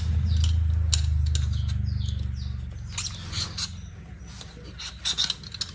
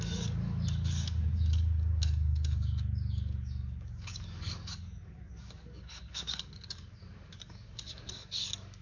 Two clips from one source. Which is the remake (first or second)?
second